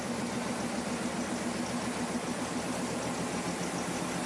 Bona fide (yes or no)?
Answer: yes